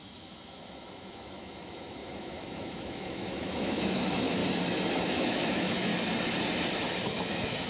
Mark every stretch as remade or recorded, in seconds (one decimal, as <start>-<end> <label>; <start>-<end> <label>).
0.0-4.4 remade; 4.4-5.0 recorded; 5.0-5.9 remade; 5.9-7.0 recorded; 7.0-7.7 remade